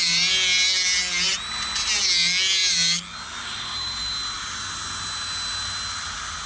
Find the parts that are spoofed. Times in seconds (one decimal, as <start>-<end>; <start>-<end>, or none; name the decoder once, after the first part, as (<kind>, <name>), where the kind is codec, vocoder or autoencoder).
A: none